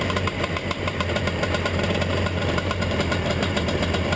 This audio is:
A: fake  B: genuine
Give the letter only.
A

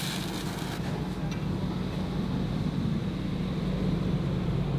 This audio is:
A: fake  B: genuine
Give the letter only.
B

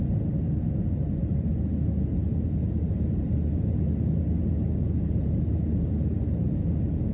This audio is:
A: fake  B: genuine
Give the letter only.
B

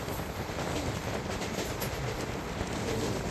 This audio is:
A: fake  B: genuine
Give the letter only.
B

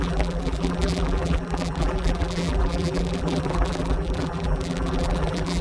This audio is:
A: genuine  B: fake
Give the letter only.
B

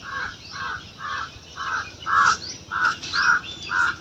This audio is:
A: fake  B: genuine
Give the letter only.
A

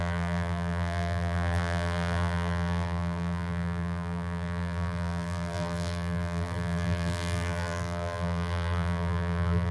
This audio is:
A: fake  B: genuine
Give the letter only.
A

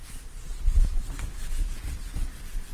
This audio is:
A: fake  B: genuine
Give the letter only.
B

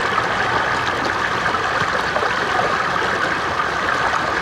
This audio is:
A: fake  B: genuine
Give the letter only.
B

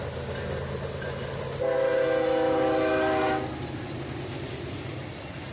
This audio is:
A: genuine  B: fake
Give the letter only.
A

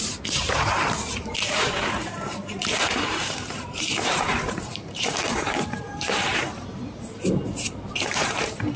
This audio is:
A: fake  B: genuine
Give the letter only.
A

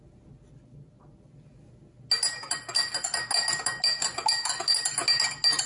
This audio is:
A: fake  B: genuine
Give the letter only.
B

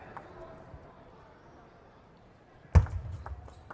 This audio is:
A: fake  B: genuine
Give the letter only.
B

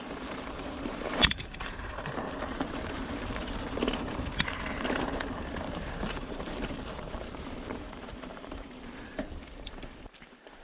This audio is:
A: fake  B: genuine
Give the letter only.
A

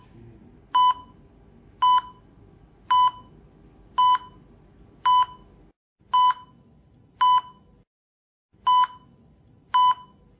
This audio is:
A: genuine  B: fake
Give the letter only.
A